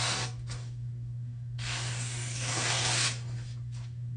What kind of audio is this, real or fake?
fake